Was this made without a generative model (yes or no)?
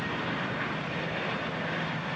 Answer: yes